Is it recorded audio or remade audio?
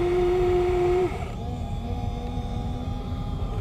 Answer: remade